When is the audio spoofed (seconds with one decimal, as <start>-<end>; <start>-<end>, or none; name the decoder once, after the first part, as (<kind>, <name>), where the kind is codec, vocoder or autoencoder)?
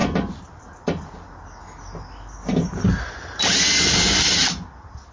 none